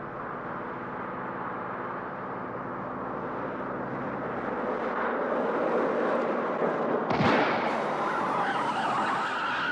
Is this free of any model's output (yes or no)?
yes